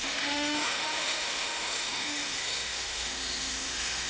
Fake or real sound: fake